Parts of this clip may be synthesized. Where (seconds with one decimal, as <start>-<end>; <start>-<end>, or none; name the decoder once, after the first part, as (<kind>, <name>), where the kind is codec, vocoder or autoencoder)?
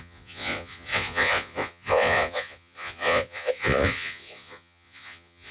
0.0-5.5 (vocoder, Vocos)